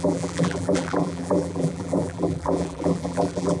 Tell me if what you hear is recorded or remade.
remade